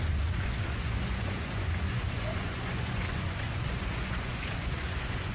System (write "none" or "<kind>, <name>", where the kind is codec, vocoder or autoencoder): vocoder, Vocos